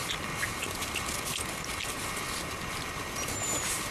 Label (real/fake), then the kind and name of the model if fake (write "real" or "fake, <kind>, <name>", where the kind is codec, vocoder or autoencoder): real